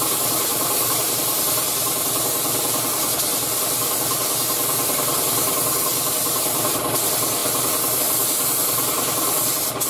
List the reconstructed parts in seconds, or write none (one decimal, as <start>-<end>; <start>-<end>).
0.5-1.1; 5.9-7.0